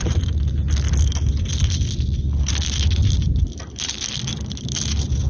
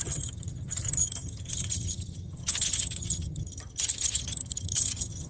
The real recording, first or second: first